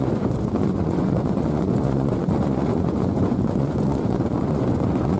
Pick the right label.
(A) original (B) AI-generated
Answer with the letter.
B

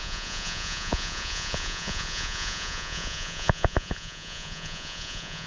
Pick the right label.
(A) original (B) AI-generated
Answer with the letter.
B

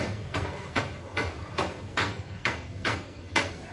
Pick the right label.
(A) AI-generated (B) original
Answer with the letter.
A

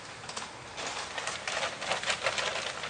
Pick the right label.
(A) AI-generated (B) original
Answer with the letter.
B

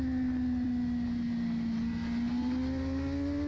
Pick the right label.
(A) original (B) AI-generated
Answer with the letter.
A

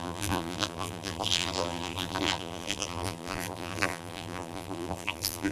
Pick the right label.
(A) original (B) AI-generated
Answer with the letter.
B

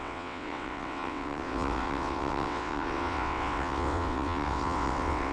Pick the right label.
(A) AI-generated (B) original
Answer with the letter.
A